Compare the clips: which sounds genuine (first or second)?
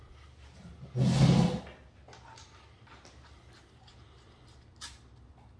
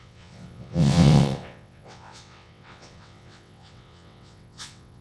first